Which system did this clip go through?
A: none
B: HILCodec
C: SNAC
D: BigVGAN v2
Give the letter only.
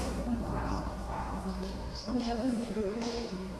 C